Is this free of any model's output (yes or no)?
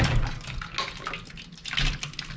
yes